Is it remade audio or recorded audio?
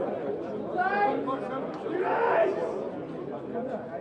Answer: recorded